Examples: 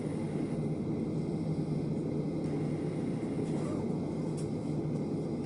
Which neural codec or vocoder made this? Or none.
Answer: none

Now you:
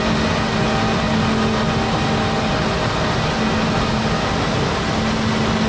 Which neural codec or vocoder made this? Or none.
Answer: none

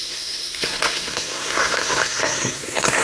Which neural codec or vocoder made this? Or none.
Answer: codec, SNAC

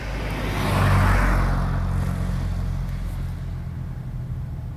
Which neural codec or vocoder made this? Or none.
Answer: none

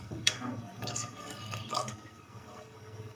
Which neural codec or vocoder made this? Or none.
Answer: codec, SNAC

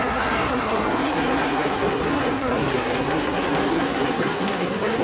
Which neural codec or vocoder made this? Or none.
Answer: codec, SNAC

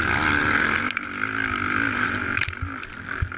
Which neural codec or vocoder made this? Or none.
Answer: none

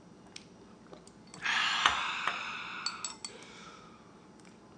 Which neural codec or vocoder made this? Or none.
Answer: none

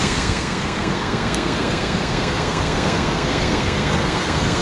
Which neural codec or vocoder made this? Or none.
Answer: codec, SNAC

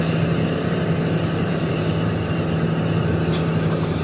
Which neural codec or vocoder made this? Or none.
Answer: none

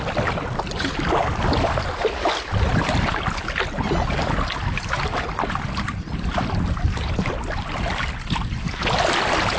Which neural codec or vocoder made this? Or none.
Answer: none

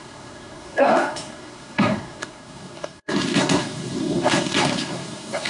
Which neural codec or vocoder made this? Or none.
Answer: codec, SNAC